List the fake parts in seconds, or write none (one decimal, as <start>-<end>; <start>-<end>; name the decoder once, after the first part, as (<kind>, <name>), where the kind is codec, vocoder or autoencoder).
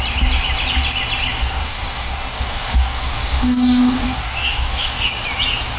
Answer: 1.6-5.1 (codec, DAC)